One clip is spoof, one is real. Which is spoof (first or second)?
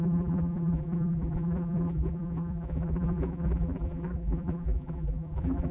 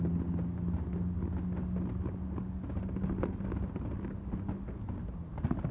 first